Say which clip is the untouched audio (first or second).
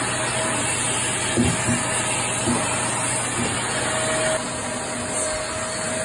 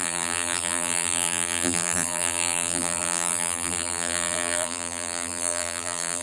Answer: first